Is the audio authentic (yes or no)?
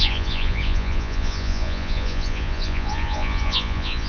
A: no